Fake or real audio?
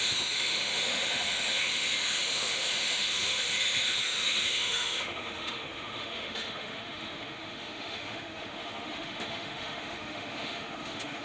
fake